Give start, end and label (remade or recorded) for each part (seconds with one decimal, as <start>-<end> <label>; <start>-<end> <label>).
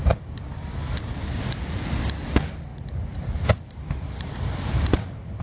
0.0-2.7 recorded; 2.7-5.4 remade